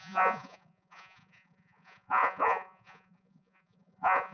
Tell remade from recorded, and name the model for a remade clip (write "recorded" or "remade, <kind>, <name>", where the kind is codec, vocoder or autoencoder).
remade, vocoder, Vocos